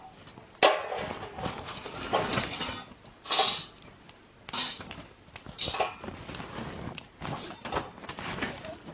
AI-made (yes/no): no